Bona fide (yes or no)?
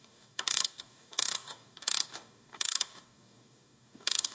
no